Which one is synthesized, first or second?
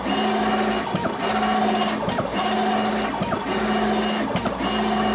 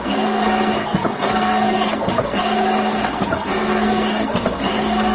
second